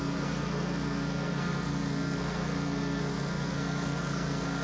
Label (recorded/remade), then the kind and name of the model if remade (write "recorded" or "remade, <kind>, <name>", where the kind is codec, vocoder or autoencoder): remade, codec, SNAC